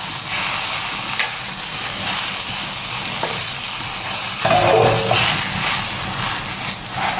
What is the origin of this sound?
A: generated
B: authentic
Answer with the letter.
B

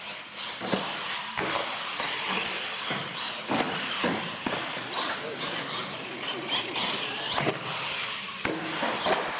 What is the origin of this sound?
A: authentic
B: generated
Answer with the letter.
A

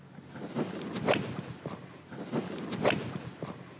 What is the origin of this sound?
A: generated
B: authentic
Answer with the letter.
B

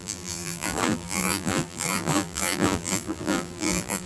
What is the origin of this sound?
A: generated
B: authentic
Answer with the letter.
A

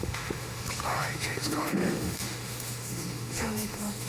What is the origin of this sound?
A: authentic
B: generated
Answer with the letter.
B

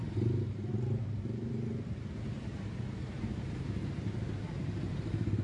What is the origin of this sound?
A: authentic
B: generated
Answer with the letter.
B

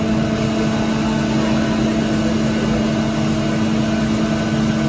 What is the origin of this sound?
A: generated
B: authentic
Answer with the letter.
B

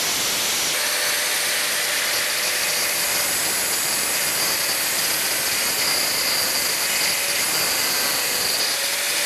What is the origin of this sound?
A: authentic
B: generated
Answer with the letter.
A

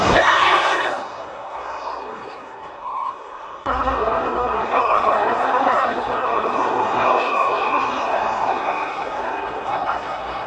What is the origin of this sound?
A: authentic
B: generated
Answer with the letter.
B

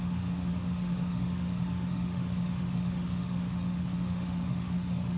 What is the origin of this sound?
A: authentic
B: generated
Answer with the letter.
B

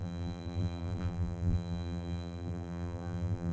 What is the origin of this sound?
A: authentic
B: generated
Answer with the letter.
B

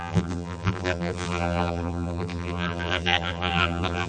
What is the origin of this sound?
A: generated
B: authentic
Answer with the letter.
A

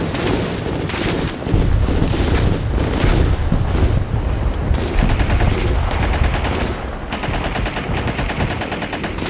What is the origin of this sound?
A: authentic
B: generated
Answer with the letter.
A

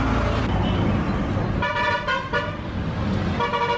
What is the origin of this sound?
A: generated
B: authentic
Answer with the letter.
B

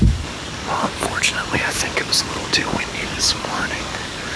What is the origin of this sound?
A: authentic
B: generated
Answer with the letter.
B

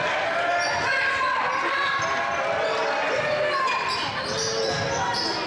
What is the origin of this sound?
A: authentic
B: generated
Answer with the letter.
A